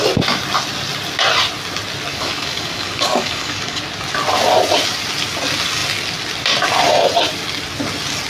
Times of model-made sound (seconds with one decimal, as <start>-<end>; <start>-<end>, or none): 2.1-3.8